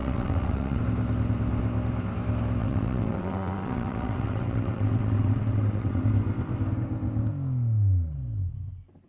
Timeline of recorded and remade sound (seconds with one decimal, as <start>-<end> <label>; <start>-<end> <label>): 0.0-0.8 remade; 0.8-2.6 recorded; 2.6-6.1 remade; 6.1-9.1 recorded